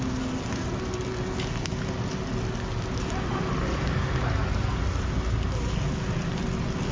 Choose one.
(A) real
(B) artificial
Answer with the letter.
A